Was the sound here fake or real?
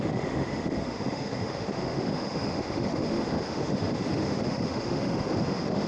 fake